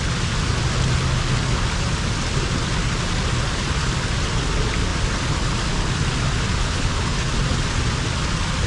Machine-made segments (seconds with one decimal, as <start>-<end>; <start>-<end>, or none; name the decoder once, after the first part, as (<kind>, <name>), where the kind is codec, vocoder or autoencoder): 6.6-7.3 (codec, HILCodec)